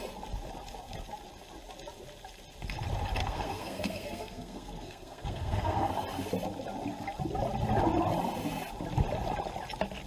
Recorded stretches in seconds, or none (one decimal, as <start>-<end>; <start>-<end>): 0.0-3.2; 5.9-10.1